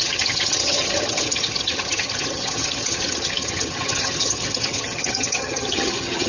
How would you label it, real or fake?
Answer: fake